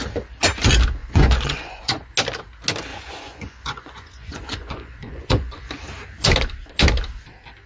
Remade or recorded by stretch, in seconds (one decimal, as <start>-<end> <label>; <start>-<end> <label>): 0.0-1.0 recorded; 1.0-2.1 remade; 2.1-2.9 recorded; 2.9-5.7 remade; 5.7-7.7 recorded